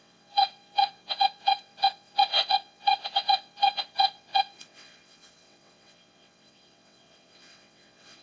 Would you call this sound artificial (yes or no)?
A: yes